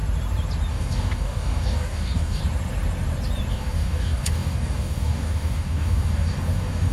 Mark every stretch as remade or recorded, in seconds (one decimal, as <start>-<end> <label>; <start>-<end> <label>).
0.0-0.7 recorded; 0.7-2.4 remade; 2.4-3.5 recorded; 3.5-6.9 remade